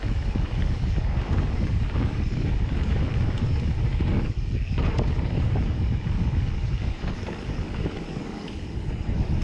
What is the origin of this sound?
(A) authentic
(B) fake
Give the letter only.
B